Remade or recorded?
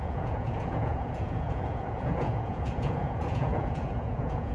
remade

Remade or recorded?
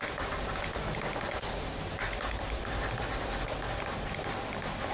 recorded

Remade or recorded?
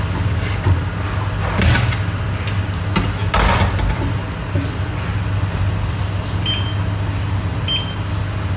recorded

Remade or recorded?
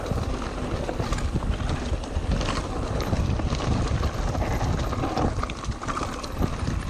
recorded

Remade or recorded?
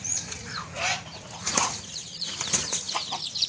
remade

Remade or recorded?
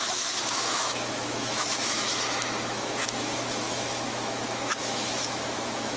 remade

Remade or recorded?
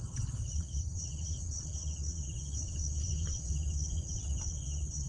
remade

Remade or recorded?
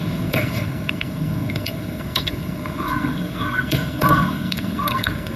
remade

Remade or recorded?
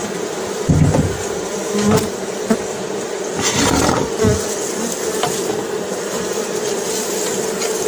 recorded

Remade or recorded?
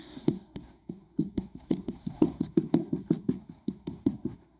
remade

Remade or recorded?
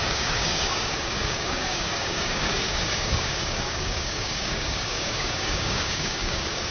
remade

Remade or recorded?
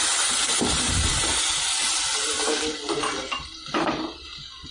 recorded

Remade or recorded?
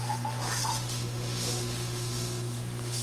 remade